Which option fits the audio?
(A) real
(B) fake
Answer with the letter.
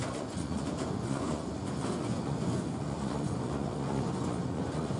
B